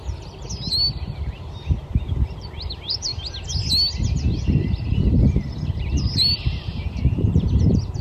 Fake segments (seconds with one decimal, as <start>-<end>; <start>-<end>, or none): 1.9-3.1; 4.9-8.0